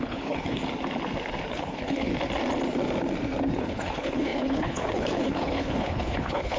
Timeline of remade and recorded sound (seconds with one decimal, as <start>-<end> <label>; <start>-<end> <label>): 0.0-0.6 remade; 0.6-1.5 recorded; 1.5-2.1 remade; 2.1-3.6 recorded; 3.6-6.6 remade